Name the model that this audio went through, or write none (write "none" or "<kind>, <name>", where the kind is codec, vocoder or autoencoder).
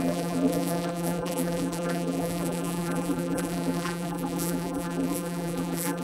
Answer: vocoder, BigVGAN v2